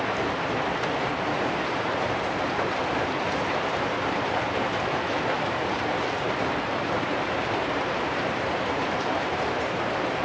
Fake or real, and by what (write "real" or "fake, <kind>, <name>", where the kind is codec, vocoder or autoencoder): fake, vocoder, BigVGAN v2